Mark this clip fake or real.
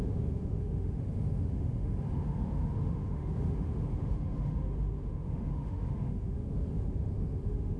fake